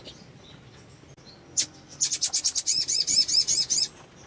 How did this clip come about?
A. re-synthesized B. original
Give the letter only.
B